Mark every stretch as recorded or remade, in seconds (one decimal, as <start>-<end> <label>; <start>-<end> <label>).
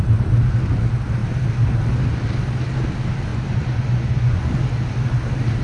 0.0-3.3 recorded; 3.3-4.6 remade; 4.6-5.6 recorded